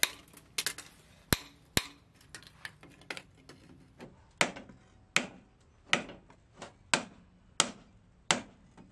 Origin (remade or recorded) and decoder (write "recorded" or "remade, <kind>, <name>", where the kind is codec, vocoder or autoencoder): recorded